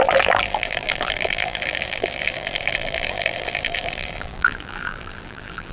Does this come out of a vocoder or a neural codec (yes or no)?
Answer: yes